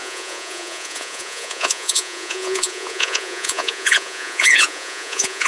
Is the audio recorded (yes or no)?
no